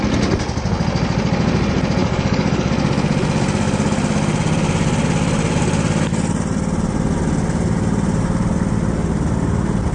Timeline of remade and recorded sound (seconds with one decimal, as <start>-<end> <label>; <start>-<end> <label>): 0.0-2.0 recorded; 2.0-2.7 remade; 2.7-9.9 recorded